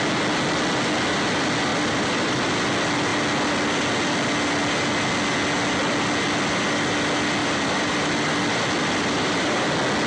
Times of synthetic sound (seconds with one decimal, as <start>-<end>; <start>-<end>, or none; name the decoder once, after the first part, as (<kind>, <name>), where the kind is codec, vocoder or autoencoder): 1.7-2.5 (vocoder, BigVGAN v2); 7.4-9.7